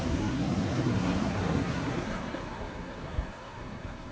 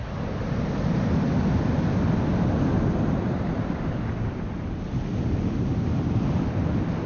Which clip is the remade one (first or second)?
first